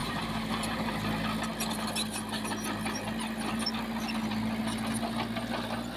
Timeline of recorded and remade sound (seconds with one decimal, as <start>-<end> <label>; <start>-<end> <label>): 0.0-0.9 remade; 0.9-6.0 recorded